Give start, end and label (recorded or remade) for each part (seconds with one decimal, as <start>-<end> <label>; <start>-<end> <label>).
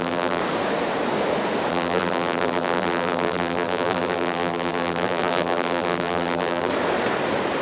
0.0-0.4 remade; 0.4-1.7 recorded; 1.7-6.7 remade; 6.7-7.6 recorded